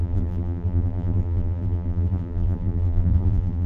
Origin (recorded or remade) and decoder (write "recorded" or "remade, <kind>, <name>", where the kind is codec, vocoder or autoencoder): remade, vocoder, BigVGAN v2